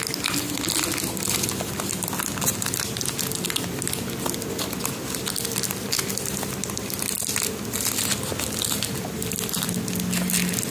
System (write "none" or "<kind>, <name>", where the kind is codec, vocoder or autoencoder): none